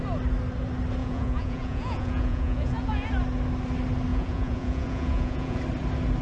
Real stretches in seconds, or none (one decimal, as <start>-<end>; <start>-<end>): 0.0-1.0; 3.1-4.1; 5.6-6.2